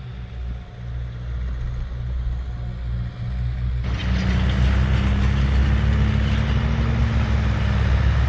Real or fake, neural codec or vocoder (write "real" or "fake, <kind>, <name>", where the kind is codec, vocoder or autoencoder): real